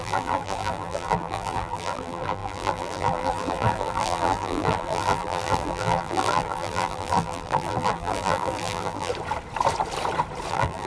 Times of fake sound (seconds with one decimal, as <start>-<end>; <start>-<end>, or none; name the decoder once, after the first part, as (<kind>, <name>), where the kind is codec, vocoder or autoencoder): 0.0-9.1 (vocoder, BigVGAN v2); 10.5-10.9